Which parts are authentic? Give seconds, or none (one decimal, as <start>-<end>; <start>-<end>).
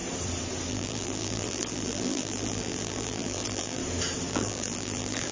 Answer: 0.0-0.7; 3.8-4.3